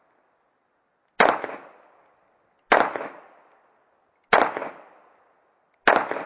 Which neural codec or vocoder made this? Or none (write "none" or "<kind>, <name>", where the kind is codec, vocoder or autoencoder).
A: none